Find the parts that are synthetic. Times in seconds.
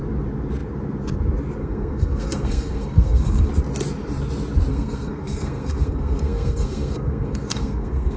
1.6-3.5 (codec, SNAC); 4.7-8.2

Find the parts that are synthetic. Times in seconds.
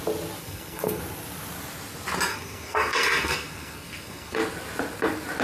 0.4-1.0 (codec, SNAC); 2.3-4.4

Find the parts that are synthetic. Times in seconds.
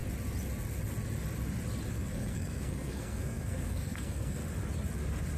1.9-4.4 (codec, SNAC)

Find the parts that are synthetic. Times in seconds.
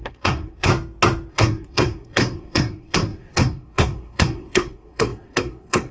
0.0-0.7 (codec, SNAC); 1.3-5.9